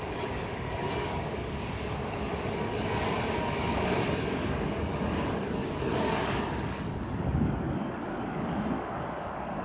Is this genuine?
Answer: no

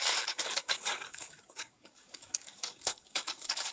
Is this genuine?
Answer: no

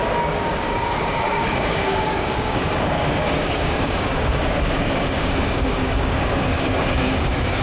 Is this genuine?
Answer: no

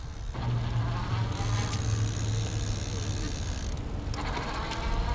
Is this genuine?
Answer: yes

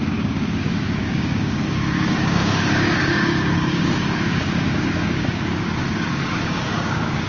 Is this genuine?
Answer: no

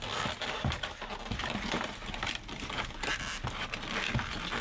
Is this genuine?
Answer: yes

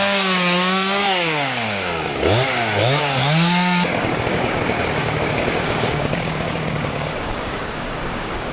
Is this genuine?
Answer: no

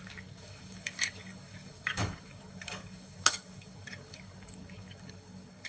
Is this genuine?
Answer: no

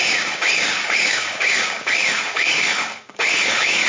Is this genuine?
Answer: no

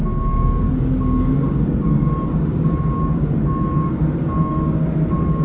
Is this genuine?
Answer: no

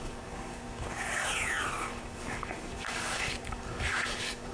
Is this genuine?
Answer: no